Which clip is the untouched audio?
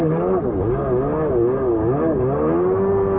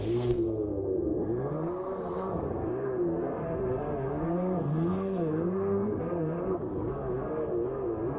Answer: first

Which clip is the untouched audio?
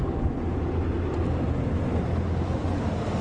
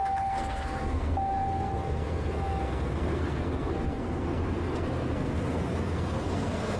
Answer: first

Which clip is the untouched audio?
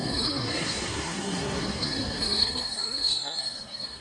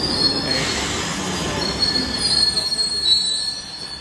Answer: second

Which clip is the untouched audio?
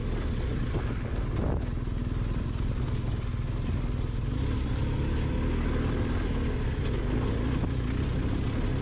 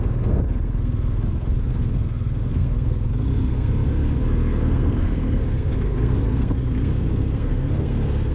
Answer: first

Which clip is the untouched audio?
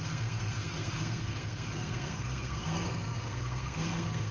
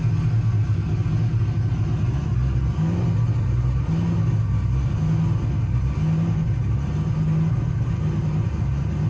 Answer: second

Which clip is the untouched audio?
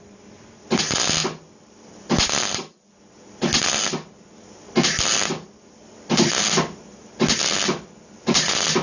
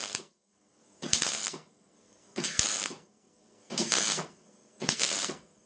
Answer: first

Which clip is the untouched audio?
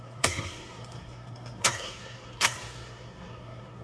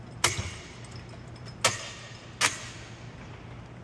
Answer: second